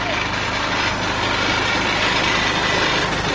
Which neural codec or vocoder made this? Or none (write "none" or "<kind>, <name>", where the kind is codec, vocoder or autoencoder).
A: none